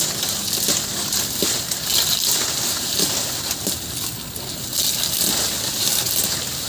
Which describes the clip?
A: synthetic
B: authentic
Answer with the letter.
B